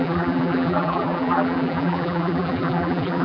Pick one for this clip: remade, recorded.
remade